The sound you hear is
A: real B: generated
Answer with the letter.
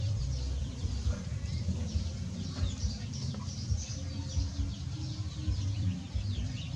B